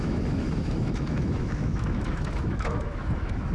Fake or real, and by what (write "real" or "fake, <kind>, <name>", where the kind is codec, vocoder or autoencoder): fake, autoencoder, DAC-VAE